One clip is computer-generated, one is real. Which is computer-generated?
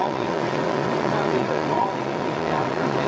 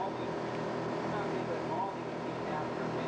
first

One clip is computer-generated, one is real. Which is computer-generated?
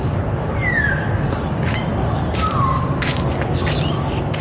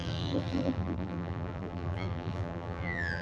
second